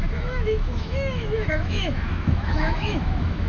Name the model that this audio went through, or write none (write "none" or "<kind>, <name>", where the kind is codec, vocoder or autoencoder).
autoencoder, DAC-VAE